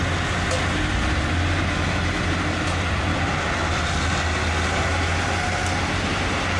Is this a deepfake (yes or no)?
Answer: no